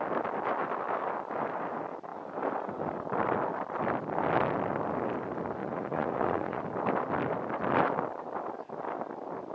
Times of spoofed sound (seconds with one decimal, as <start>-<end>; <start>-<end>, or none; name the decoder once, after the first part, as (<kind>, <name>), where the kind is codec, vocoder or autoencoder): 5.6-6.6 (vocoder, Vocos)